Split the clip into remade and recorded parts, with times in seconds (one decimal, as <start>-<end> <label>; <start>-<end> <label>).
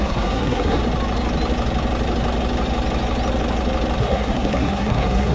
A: 0.0-0.8 remade; 0.8-4.0 recorded; 4.0-5.3 remade